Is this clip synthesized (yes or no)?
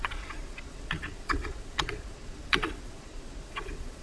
yes